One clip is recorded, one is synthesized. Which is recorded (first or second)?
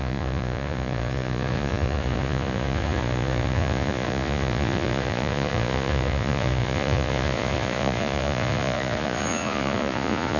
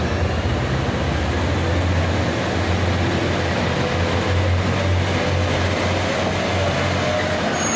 second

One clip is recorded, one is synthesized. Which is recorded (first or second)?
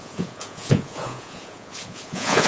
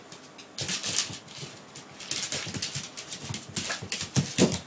second